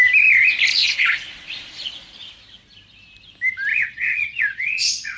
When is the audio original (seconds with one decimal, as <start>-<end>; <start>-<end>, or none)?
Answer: 0.0-0.8; 1.9-3.7